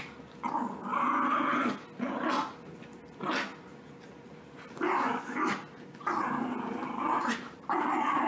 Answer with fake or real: real